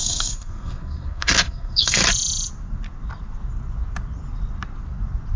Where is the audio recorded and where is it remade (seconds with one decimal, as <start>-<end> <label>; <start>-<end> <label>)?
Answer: 0.0-2.0 remade; 2.0-5.4 recorded